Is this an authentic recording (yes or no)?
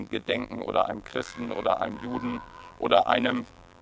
no